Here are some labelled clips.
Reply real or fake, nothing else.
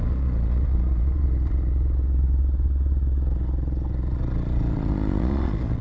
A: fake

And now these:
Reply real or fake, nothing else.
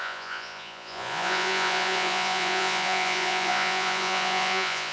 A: fake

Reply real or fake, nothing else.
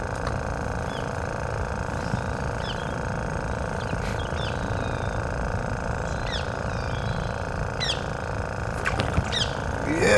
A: real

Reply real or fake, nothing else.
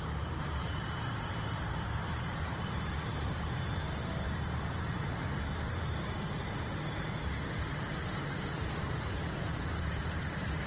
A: fake